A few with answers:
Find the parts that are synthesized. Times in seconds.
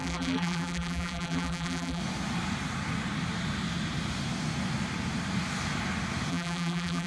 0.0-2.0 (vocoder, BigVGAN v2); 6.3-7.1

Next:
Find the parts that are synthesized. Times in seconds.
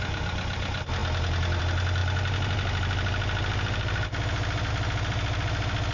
none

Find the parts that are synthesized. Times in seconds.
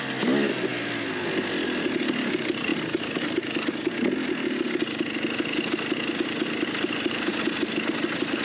none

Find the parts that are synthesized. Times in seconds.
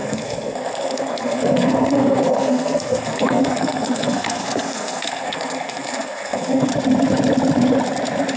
0.0-6.7 (codec, SNAC)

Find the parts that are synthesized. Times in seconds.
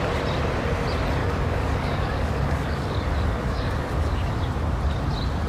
1.2-4.4 (codec, DAC)